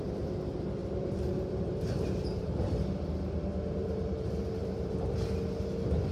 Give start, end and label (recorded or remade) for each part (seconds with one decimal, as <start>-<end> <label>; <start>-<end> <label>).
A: 0.0-0.8 recorded; 0.8-2.7 remade; 2.7-3.8 recorded; 3.8-5.0 remade; 5.0-6.1 recorded